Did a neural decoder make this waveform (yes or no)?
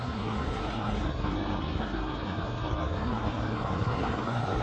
yes